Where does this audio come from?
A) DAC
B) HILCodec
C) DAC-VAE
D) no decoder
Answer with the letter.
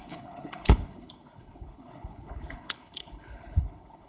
B